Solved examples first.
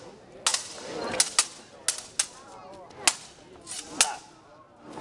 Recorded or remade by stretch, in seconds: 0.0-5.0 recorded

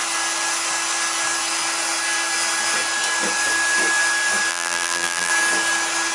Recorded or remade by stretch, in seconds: 0.0-4.5 recorded; 4.5-5.3 remade; 5.3-6.1 recorded

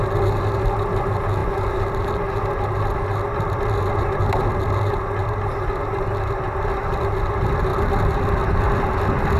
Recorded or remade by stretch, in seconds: 0.0-9.4 recorded

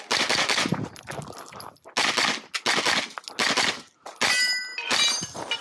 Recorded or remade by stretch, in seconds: 0.0-4.7 recorded; 4.7-5.6 remade

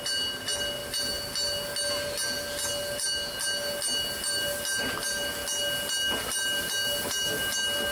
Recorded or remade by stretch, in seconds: 0.0-7.9 recorded

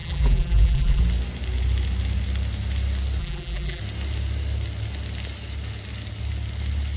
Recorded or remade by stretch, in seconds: 0.0-1.0 remade; 1.0-3.2 recorded; 3.2-3.8 remade; 3.8-7.0 recorded